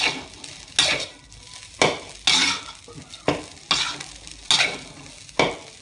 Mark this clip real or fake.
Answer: real